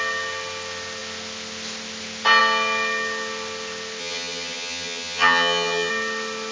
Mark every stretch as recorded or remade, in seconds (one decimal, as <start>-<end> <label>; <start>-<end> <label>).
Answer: 0.0-4.0 recorded; 4.0-5.9 remade; 5.9-6.5 recorded